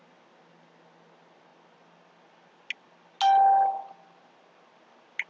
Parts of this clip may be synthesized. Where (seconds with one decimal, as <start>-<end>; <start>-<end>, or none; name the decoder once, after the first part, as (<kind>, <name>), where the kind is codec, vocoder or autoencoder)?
none